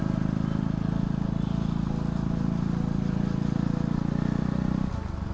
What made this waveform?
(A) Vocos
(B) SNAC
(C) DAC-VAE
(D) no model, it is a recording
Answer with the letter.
D